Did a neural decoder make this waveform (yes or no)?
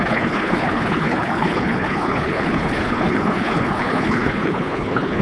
yes